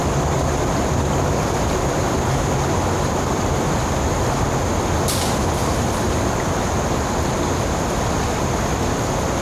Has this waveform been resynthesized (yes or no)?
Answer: no